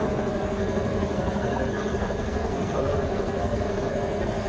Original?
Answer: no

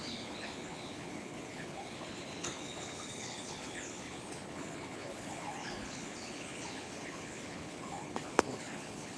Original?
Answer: no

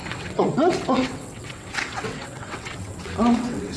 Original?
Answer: no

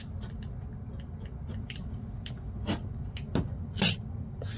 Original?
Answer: yes